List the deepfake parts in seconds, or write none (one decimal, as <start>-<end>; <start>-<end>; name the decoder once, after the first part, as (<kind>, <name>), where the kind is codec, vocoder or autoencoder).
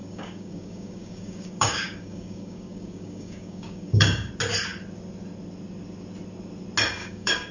0.0-4.3 (codec, DAC); 7.0-7.5